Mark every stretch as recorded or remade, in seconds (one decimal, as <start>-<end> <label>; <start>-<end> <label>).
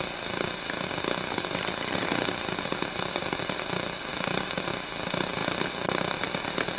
0.0-6.8 recorded